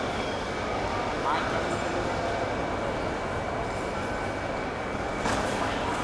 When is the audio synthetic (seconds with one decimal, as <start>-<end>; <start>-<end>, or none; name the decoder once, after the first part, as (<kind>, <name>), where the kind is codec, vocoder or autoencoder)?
0.0-0.9 (codec, DAC); 4.5-6.0